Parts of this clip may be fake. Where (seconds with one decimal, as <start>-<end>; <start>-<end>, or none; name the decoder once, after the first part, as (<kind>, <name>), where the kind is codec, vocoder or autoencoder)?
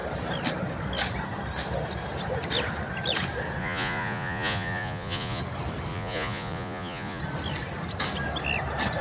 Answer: 3.6-5.4 (vocoder, Vocos); 5.9-7.2